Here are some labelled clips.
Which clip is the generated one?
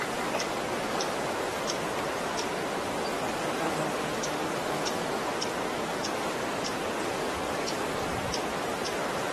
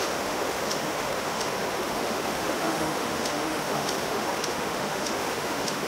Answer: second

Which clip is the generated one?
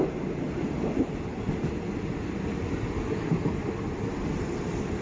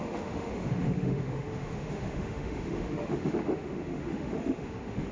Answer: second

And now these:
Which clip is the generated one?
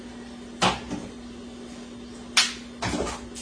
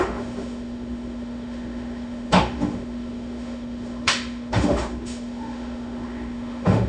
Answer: second